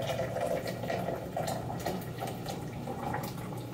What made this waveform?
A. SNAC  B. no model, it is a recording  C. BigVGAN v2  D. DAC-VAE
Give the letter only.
B